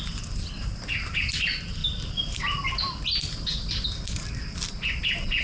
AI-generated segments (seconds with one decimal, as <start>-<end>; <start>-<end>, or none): none